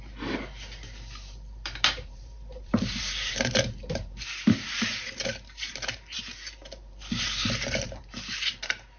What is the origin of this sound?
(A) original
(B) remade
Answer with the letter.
B